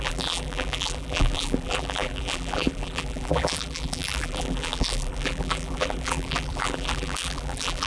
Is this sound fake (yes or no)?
yes